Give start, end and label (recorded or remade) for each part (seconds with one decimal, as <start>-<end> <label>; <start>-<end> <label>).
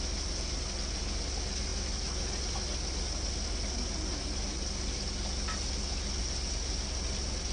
0.0-7.5 recorded